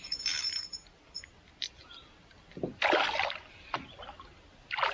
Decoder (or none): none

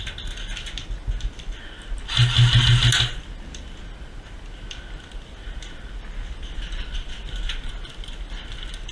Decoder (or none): none